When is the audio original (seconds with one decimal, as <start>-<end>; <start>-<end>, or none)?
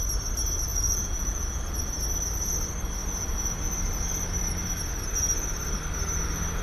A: 0.0-0.7; 1.6-6.6